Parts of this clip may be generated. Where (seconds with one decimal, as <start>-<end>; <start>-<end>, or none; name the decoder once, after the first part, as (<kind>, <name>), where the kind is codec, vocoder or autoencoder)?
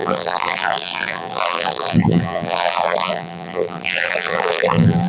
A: 0.0-5.1 (vocoder, BigVGAN v2)